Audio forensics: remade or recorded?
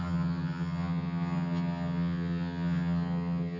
remade